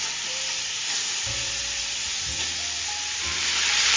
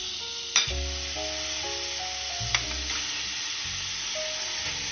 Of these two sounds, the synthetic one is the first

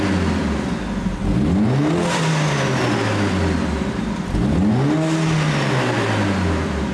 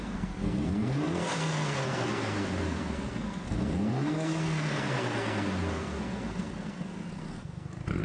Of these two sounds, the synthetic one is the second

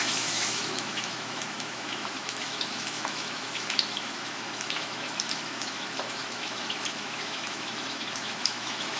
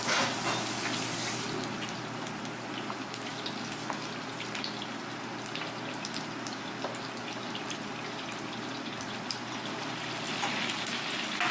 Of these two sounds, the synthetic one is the first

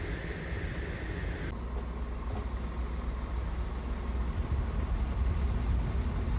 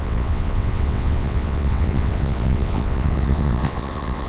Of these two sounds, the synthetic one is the second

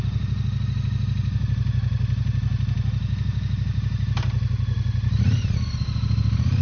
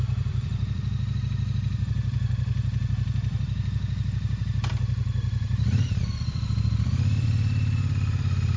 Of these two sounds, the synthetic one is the second